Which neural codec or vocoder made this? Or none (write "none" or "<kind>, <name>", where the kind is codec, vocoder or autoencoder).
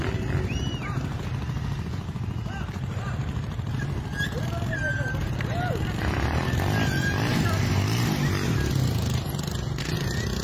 none